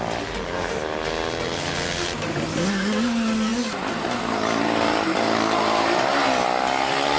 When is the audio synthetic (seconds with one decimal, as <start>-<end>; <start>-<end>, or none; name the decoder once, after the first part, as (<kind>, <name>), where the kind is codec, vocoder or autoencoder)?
none